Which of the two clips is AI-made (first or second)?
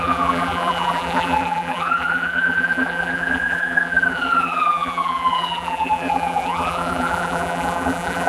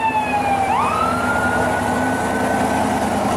first